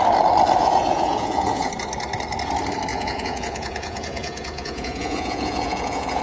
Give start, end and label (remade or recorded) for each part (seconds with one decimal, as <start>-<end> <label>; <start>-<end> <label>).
0.0-0.6 recorded; 0.6-1.7 remade; 1.7-2.9 recorded; 2.9-6.2 remade